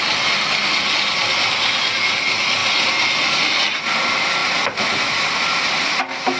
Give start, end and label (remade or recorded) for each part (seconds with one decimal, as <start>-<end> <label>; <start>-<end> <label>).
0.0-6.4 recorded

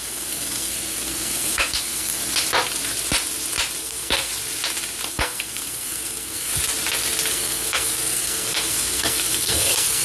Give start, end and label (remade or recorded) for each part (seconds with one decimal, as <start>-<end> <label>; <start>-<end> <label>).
0.0-2.2 remade; 2.2-3.8 recorded; 3.8-4.3 remade; 4.3-5.1 recorded; 5.1-6.5 remade; 6.5-7.3 recorded; 7.3-10.0 remade

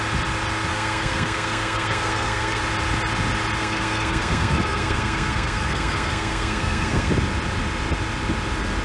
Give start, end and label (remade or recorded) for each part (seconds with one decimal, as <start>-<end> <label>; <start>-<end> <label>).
0.0-0.7 recorded; 0.7-2.6 remade; 2.6-3.6 recorded; 3.6-7.1 remade; 7.1-8.8 recorded

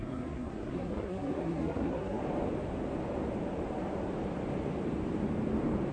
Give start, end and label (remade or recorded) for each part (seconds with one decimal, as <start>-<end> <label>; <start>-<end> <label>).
0.0-2.2 remade; 2.2-5.9 recorded

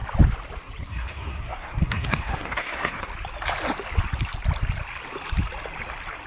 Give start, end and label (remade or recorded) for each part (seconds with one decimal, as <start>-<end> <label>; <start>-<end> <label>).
0.0-0.8 recorded; 0.8-3.1 remade; 3.1-6.3 recorded

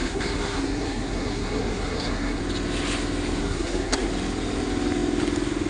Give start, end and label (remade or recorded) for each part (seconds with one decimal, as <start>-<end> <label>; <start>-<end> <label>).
0.0-2.4 remade; 2.4-3.4 recorded; 3.4-4.1 remade; 4.1-5.7 recorded

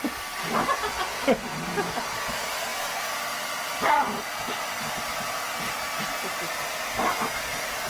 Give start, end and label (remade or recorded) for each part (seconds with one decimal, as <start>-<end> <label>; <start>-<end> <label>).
0.0-7.9 recorded

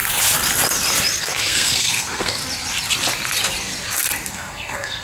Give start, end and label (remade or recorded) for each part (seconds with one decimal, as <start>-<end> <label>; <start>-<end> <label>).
0.0-1.2 recorded; 1.2-2.4 remade; 2.4-4.3 recorded; 4.3-5.0 remade